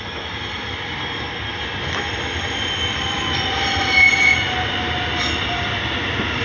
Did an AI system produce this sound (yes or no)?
no